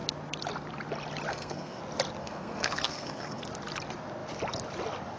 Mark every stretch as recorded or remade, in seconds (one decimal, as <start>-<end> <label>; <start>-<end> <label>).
0.0-1.3 recorded; 1.3-1.8 remade; 1.8-2.2 recorded; 2.2-3.4 remade; 3.4-5.2 recorded